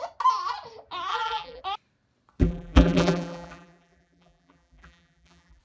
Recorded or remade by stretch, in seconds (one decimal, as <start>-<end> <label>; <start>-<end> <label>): 0.0-1.1 recorded; 1.1-1.6 remade; 1.6-2.4 recorded; 2.4-5.6 remade